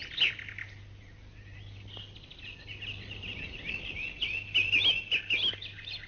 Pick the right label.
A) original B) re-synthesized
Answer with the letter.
A